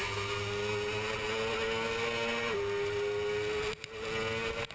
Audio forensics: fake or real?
real